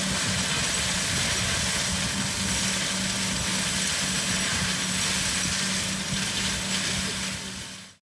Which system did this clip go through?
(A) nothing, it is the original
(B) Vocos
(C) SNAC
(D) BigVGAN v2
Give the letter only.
A